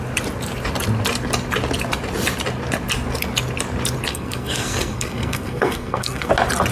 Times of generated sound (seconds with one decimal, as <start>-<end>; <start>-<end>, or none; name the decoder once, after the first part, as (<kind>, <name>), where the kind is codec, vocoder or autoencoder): 4.1-6.3 (codec, SNAC)